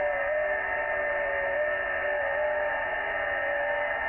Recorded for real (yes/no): yes